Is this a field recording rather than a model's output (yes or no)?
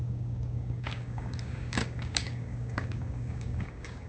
no